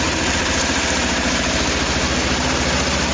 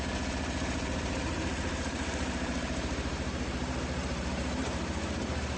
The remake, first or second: second